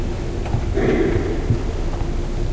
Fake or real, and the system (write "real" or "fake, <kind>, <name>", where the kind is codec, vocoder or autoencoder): real